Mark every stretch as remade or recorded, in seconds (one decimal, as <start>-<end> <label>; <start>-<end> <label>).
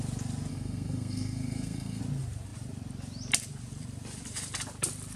0.0-0.5 recorded; 0.5-2.0 remade; 2.0-5.2 recorded